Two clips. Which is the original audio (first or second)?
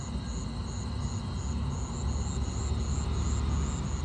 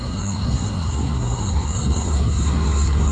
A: first